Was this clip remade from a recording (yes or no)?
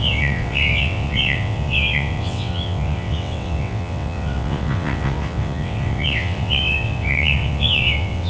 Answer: yes